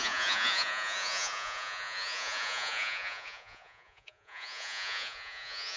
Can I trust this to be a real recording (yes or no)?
no